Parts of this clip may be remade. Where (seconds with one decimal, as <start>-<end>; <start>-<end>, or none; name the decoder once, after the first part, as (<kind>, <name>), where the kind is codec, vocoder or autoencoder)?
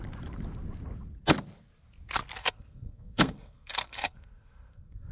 2.4-5.1 (codec, SNAC)